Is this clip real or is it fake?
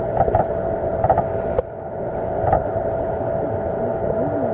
real